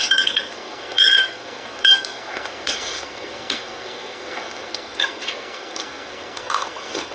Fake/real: fake